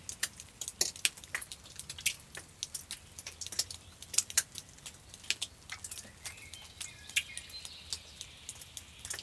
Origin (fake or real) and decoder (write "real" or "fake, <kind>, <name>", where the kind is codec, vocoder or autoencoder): real